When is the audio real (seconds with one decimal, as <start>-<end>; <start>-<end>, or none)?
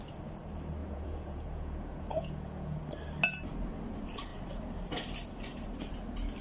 0.0-0.8; 2.8-6.4